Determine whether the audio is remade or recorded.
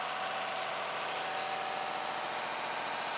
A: recorded